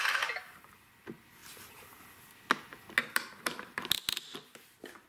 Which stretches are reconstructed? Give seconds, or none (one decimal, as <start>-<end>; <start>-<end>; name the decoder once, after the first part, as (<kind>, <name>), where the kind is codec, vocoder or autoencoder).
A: none